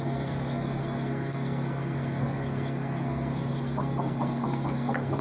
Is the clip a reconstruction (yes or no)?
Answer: yes